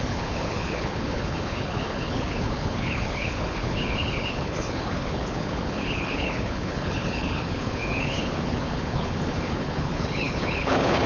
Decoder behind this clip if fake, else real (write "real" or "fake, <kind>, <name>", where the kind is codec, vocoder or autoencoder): fake, codec, HILCodec